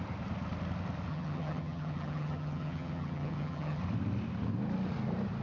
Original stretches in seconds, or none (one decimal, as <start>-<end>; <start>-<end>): 0.0-1.1; 3.8-5.4